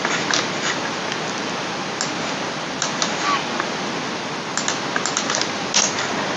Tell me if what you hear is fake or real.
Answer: real